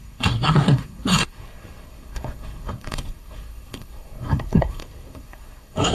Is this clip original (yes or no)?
no